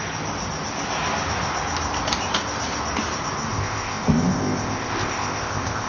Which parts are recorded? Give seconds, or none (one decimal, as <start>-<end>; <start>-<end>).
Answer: 0.0-3.5